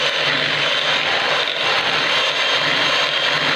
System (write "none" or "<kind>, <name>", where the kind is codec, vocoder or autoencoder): none